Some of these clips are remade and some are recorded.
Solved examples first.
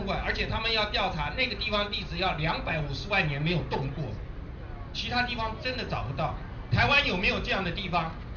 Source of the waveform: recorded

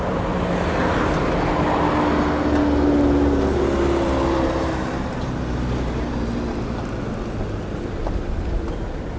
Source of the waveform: recorded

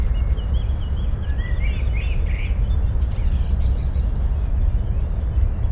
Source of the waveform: recorded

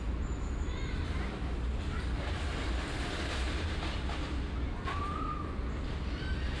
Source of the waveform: recorded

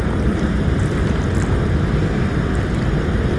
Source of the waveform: recorded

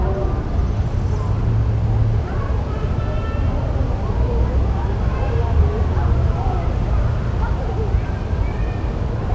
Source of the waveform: recorded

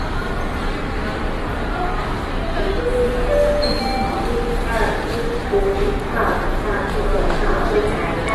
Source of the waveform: remade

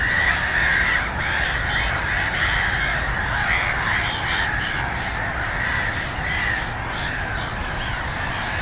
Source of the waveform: recorded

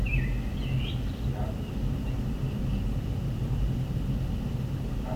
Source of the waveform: recorded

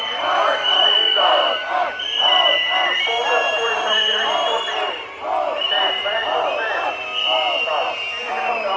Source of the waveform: remade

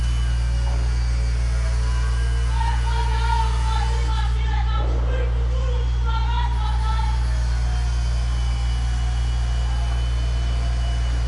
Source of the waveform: recorded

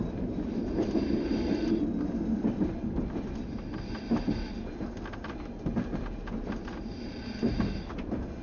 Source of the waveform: recorded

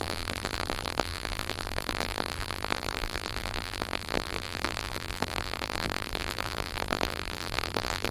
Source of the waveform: remade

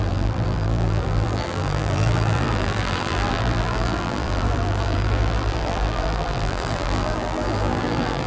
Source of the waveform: remade